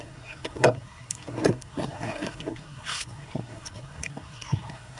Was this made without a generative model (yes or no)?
no